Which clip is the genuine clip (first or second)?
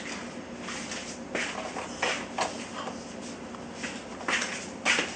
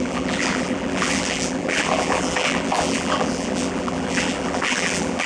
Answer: first